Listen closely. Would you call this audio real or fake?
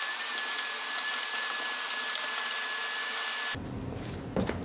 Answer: real